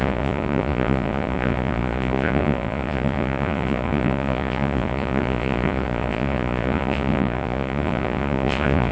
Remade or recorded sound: remade